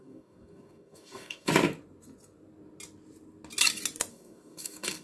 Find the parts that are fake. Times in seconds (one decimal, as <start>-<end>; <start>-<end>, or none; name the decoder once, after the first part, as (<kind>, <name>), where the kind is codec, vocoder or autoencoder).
0.0-1.5 (codec, DAC); 4.1-5.0